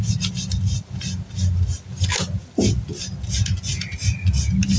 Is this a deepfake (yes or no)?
no